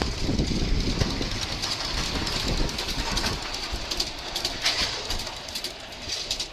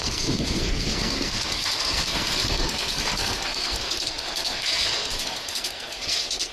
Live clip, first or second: first